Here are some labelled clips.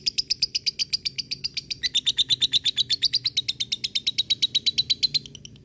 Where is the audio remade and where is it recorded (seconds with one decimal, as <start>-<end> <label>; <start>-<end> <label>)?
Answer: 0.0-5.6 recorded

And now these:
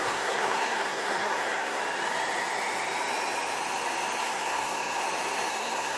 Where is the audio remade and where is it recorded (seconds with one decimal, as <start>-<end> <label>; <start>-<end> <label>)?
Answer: 0.0-1.8 remade; 1.8-4.2 recorded; 4.2-5.0 remade; 5.0-5.5 recorded; 5.5-6.0 remade

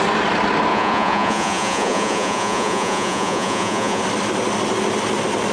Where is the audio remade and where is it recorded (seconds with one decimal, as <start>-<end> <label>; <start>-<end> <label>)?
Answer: 0.0-0.7 recorded; 0.7-4.0 remade; 4.0-5.5 recorded

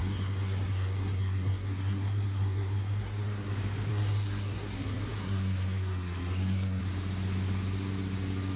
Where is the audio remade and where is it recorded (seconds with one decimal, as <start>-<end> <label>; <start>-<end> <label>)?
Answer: 0.0-3.5 remade; 3.5-3.9 recorded; 3.9-6.8 remade; 6.8-8.6 recorded

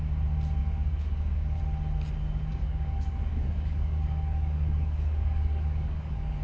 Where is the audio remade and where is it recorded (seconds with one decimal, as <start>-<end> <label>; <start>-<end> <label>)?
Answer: 0.0-0.6 recorded; 0.6-1.6 remade; 1.6-2.5 recorded; 2.5-6.4 remade

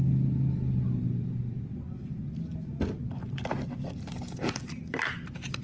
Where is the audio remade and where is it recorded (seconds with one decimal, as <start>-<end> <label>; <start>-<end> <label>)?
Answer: 0.0-5.6 recorded

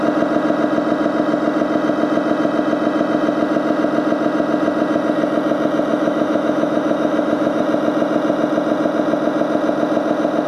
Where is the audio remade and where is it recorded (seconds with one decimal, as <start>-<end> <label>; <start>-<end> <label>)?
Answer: 0.0-5.9 recorded; 5.9-7.6 remade; 7.6-10.5 recorded

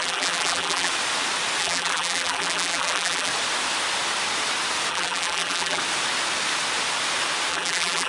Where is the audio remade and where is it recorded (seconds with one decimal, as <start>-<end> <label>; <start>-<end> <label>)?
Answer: 0.0-0.9 remade; 0.9-1.6 recorded; 1.6-3.3 remade; 3.3-4.9 recorded; 4.9-5.8 remade; 5.8-7.5 recorded; 7.5-8.1 remade